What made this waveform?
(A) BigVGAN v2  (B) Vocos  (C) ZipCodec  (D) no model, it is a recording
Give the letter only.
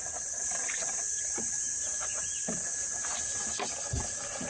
D